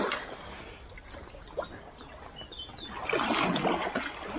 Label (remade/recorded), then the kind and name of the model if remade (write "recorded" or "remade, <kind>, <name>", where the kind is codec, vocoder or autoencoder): recorded